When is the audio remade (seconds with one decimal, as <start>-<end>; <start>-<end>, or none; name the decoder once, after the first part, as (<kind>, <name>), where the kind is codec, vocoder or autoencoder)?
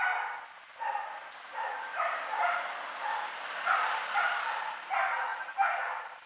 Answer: none